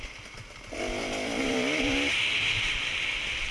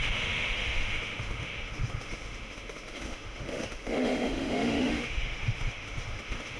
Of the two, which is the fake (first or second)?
second